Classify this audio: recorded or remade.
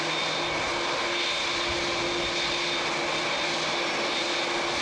recorded